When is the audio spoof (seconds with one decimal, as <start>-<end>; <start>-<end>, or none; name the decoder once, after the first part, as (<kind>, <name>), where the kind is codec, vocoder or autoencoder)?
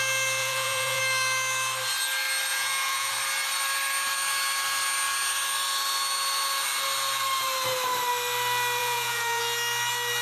0.4-1.0 (vocoder, Vocos); 2.5-3.1; 8.8-9.4